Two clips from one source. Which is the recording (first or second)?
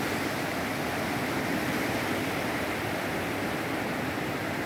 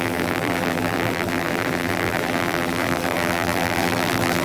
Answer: first